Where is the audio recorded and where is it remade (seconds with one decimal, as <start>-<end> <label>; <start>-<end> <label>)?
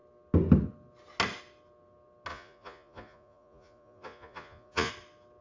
0.0-2.3 recorded; 2.3-4.9 remade; 4.9-5.4 recorded